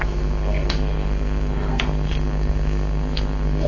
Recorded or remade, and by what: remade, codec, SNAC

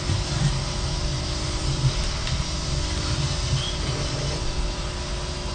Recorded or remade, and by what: recorded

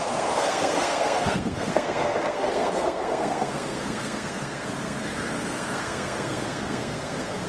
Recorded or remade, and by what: remade, codec, SNAC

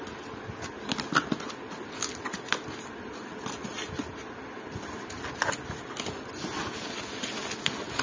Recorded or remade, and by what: recorded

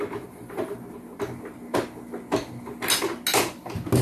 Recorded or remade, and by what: recorded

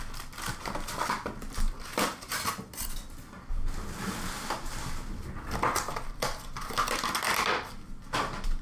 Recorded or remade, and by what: recorded